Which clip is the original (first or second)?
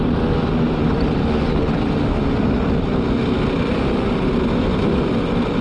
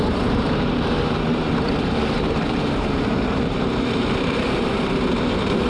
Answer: first